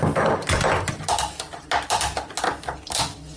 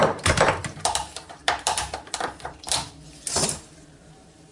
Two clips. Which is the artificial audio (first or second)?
second